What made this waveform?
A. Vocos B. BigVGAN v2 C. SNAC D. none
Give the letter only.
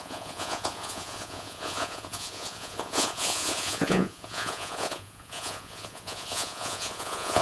A